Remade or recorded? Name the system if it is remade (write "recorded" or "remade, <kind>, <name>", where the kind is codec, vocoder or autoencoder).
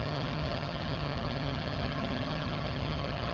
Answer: remade, vocoder, HiFi-GAN